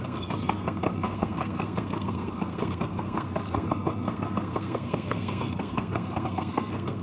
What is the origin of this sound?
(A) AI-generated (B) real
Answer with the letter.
A